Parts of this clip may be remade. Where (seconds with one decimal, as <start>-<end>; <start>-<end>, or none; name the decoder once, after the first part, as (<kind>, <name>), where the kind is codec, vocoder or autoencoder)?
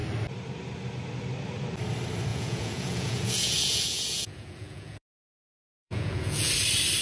2.3-6.5 (vocoder, Vocos)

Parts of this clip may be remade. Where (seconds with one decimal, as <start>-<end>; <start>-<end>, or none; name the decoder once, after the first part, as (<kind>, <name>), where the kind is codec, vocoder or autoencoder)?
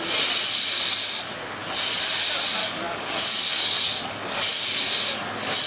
2.6-4.6 (codec, DAC)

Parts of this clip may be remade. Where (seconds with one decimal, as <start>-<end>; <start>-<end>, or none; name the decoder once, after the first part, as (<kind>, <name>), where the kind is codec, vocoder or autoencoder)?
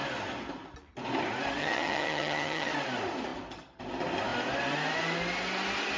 1.6-2.7 (vocoder, HiFi-GAN)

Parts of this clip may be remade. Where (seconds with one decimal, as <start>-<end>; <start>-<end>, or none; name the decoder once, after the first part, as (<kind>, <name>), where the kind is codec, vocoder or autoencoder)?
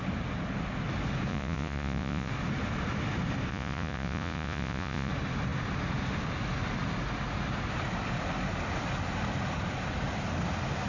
1.3-2.3 (vocoder, Vocos); 3.5-5.1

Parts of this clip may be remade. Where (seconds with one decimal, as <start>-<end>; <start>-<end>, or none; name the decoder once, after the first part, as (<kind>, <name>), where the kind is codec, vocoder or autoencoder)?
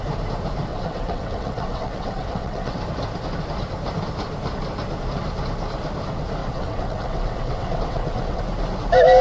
0.7-2.8 (vocoder, WaveNeXt); 6.4-8.4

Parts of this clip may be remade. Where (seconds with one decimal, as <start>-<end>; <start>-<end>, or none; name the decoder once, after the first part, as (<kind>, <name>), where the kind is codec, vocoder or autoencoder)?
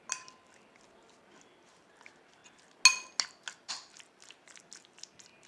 none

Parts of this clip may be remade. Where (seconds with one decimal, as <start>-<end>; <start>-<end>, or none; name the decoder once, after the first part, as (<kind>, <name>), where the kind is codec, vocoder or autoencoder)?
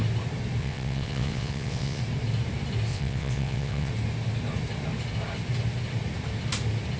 0.6-2.0 (vocoder, WaveNeXt); 2.9-3.9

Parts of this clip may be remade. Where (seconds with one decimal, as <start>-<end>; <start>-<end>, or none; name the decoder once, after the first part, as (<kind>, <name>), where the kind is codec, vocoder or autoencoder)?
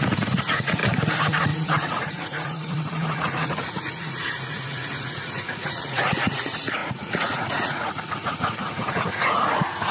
0.0-0.8 (vocoder, Vocos); 1.4-9.9